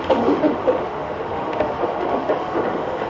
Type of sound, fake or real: fake